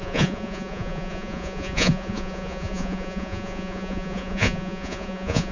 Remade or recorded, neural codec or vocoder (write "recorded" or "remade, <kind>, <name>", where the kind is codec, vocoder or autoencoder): remade, vocoder, Vocos